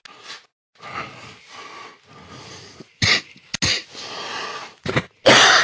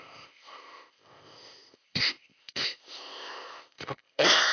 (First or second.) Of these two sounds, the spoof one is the second